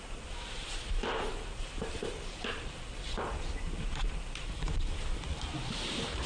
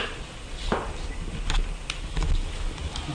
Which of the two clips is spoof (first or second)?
first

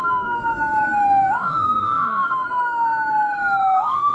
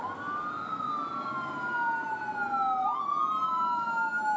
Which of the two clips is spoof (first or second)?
first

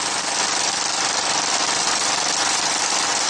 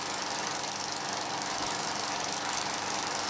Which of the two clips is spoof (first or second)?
second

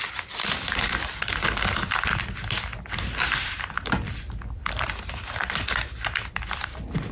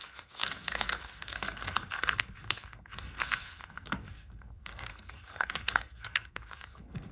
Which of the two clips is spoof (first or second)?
second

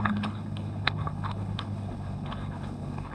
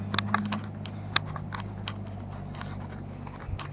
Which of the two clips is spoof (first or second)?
first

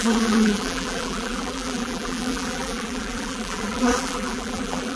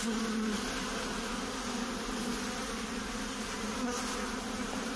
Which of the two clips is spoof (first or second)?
first